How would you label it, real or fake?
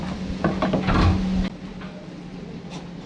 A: real